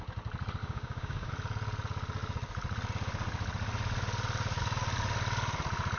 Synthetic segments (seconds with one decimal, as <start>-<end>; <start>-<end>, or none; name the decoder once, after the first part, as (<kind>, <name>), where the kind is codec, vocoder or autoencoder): 0.6-1.3 (codec, DAC)